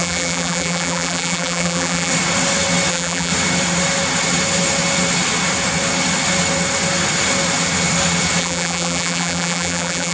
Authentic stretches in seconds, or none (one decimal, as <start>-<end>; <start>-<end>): 2.1-2.9; 3.3-8.4